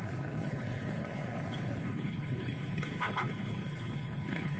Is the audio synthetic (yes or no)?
yes